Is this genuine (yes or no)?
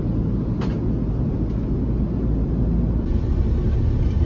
yes